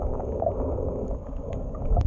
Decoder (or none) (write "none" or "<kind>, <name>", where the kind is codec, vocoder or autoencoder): codec, DAC